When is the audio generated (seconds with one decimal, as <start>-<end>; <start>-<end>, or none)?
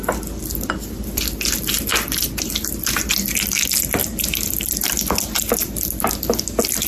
none